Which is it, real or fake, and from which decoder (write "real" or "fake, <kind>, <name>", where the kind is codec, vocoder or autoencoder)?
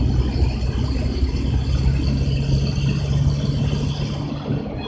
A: real